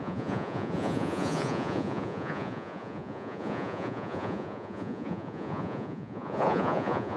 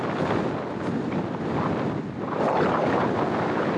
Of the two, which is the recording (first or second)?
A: second